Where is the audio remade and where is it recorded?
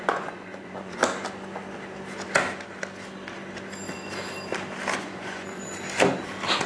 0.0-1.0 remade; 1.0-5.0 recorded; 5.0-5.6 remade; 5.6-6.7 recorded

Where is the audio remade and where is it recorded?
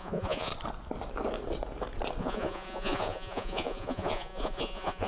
0.0-0.5 remade; 0.5-2.2 recorded; 2.2-5.1 remade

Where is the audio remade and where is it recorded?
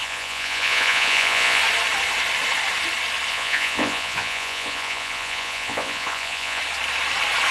0.0-1.6 remade; 1.6-3.3 recorded; 3.3-6.6 remade; 6.6-7.5 recorded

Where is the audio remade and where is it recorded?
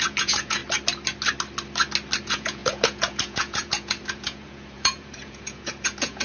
0.0-0.6 remade; 0.6-2.2 recorded; 2.2-6.2 remade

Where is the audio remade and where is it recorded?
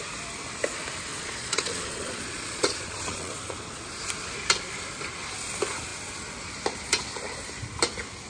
0.0-1.1 recorded; 1.1-3.9 remade; 3.9-8.3 recorded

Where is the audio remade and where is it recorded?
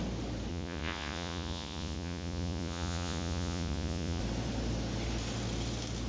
0.0-0.5 recorded; 0.5-4.2 remade; 4.2-6.1 recorded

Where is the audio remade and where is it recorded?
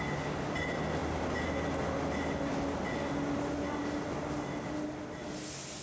0.0-5.8 recorded